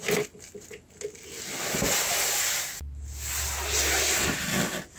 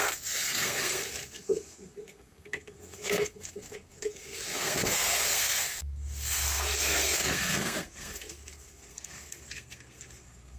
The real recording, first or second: first